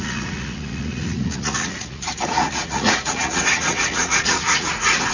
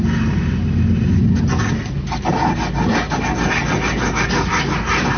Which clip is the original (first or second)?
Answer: second